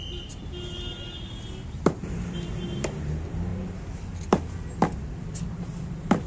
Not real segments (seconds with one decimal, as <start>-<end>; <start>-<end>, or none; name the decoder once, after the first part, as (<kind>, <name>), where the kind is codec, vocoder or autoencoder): none